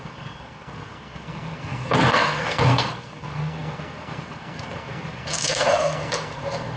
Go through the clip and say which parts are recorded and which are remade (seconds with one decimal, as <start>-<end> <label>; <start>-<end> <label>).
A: 0.0-6.8 remade